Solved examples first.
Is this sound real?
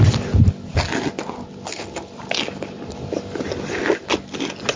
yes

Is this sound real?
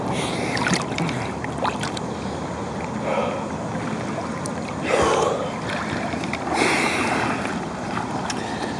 yes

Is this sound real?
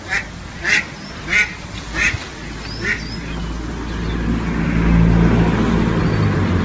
yes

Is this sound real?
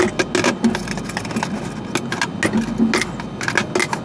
yes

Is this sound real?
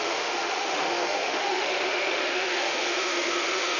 no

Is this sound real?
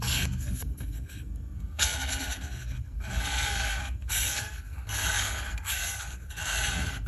no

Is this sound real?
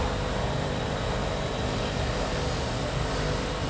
yes